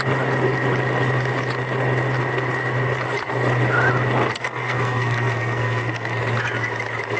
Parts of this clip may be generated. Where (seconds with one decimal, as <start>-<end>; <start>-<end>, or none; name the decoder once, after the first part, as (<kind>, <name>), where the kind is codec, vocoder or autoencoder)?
4.3-6.2 (codec, SNAC)